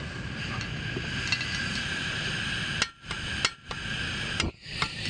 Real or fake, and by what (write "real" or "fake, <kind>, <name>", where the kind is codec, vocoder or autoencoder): real